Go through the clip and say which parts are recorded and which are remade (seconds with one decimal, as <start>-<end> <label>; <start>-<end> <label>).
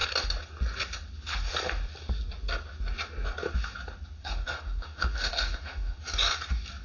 0.0-4.2 recorded; 4.2-6.0 remade; 6.0-6.8 recorded